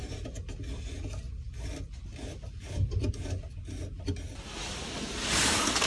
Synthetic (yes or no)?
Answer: no